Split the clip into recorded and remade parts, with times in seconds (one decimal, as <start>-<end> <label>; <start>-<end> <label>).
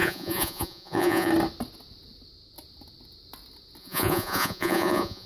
0.0-1.3 remade; 1.3-3.8 recorded; 3.8-5.3 remade